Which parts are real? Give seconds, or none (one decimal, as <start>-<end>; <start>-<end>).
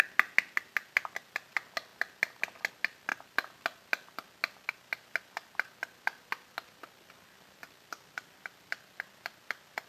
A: 0.0-9.9